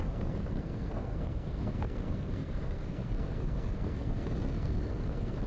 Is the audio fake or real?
fake